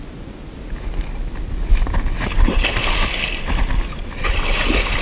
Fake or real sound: real